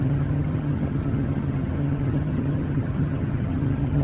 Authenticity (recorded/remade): remade